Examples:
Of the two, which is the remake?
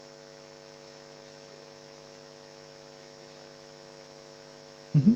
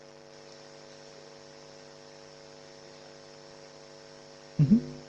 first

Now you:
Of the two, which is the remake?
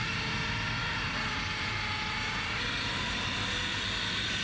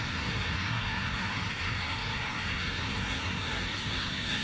second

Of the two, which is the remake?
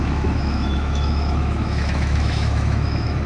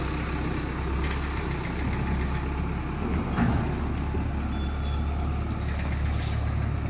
first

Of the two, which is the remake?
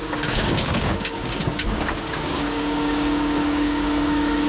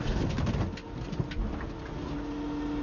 first